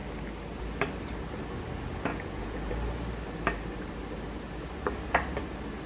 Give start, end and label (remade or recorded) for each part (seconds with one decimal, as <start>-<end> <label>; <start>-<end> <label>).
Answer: 0.0-2.1 recorded; 2.1-2.7 remade; 2.7-5.9 recorded